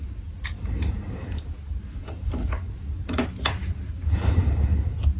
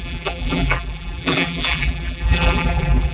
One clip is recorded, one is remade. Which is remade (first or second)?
second